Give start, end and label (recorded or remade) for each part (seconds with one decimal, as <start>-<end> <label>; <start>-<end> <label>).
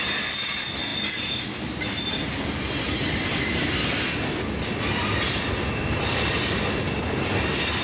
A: 0.0-7.8 recorded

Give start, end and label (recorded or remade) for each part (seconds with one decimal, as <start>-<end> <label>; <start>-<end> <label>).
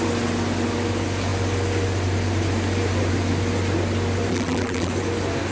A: 0.0-4.3 recorded; 4.3-4.9 remade; 4.9-5.5 recorded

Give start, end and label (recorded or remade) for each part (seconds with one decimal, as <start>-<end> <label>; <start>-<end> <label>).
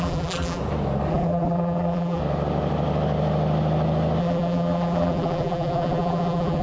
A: 0.0-0.6 remade; 0.6-1.1 recorded; 1.1-2.2 remade; 2.2-4.2 recorded; 4.2-6.6 remade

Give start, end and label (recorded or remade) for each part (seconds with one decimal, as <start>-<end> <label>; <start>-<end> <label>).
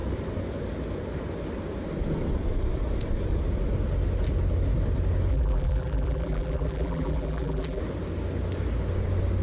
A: 0.0-5.3 recorded; 5.3-7.8 remade; 7.8-9.4 recorded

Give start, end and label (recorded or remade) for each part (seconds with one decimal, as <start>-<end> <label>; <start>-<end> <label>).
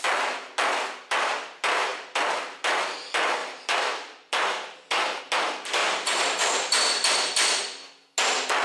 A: 0.0-3.4 recorded; 3.4-5.2 remade; 5.2-5.8 recorded; 5.8-6.4 remade; 6.4-8.6 recorded